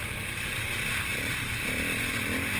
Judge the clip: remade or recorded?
remade